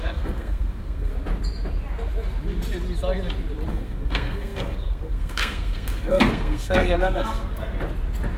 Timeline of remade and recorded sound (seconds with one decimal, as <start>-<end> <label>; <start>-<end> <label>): 0.0-1.1 remade; 1.1-3.7 recorded; 3.7-7.8 remade; 7.8-8.4 recorded